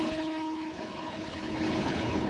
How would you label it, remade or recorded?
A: remade